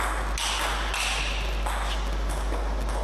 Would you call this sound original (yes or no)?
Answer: yes